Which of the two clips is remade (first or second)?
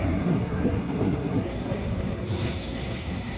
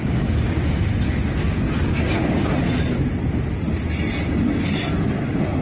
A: first